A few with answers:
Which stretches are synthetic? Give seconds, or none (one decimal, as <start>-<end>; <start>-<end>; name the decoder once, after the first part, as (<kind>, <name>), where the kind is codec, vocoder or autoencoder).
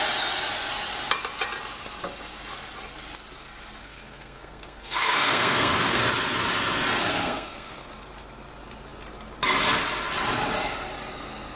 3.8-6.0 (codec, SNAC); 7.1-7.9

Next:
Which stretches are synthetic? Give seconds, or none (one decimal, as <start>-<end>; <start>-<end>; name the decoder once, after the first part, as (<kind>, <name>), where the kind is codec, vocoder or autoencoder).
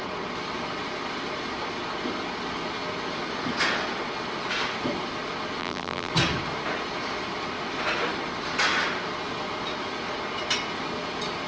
5.6-6.1 (vocoder, BigVGAN v2)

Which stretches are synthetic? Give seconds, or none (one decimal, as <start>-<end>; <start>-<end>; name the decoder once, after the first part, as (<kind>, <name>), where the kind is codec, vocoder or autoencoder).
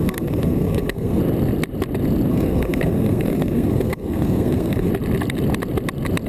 0.0-1.2 (codec, SNAC); 2.3-4.9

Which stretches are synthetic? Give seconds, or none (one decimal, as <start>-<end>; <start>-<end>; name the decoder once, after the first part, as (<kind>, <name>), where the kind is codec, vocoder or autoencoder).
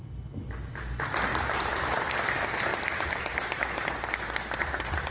1.3-2.0 (vocoder, BigVGAN v2); 2.7-4.3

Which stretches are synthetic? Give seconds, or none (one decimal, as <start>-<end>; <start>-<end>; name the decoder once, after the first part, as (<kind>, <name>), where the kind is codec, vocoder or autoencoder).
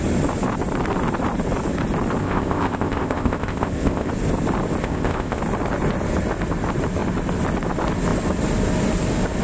2.2-4.1 (codec, ZipCodec); 4.8-5.4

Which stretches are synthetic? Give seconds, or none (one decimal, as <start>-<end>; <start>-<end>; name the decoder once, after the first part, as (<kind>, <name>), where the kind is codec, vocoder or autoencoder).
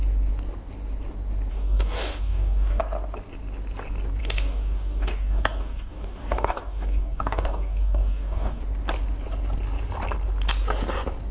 1.5-2.8 (codec, DAC); 4.2-8.6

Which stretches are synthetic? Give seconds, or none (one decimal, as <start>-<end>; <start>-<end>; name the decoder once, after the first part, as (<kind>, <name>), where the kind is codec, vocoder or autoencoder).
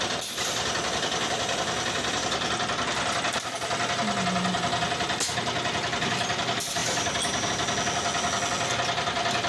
none